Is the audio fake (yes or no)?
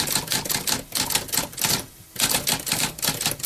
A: no